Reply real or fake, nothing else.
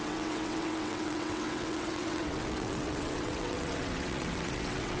fake